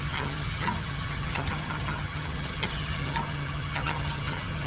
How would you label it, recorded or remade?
remade